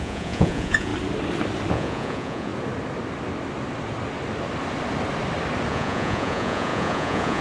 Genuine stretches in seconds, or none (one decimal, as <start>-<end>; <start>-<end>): 0.9-1.7; 2.5-5.7